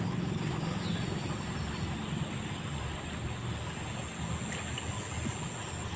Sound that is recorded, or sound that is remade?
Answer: recorded